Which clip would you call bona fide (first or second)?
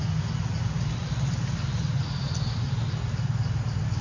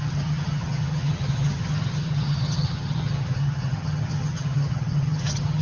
first